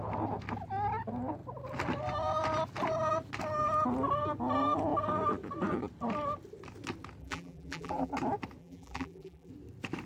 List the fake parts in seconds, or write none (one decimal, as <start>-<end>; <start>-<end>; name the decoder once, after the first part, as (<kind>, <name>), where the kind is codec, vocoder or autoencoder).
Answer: 7.2-8.1 (vocoder, BigVGAN v2); 8.6-9.5